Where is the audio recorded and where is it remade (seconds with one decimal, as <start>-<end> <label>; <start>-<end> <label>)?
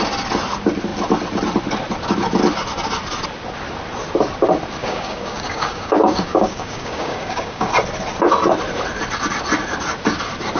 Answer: 0.0-4.8 recorded; 4.8-7.7 remade; 7.7-10.6 recorded